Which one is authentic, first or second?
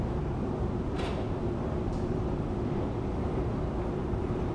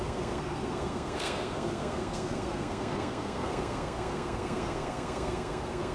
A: first